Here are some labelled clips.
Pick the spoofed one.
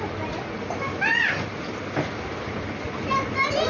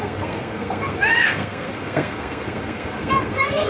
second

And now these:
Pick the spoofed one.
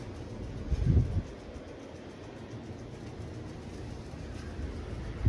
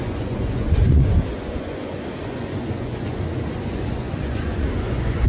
second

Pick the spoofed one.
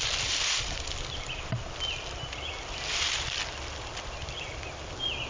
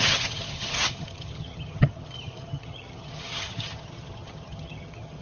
second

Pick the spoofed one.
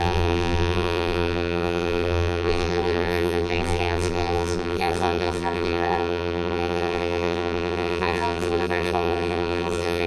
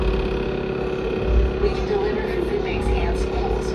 first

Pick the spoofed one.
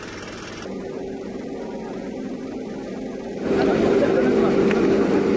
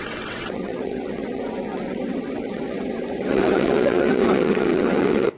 second